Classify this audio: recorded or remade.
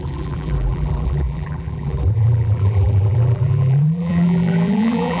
remade